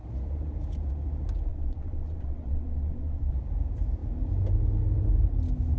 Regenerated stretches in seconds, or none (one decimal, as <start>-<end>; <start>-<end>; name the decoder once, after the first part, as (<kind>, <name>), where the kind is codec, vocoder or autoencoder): 1.5-3.3 (vocoder, WaveNeXt)